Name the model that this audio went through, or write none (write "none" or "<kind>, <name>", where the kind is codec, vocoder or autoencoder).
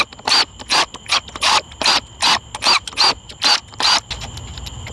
none